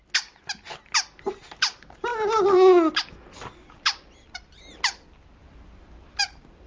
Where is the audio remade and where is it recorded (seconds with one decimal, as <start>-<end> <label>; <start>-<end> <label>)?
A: 0.0-6.7 recorded